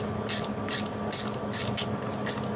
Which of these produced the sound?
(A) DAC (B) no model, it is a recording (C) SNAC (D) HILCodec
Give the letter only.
B